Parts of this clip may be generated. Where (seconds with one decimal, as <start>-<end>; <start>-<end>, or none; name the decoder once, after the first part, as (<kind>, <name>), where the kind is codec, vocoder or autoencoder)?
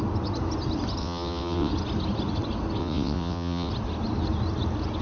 1.0-1.7 (vocoder, WaveNeXt); 2.8-3.7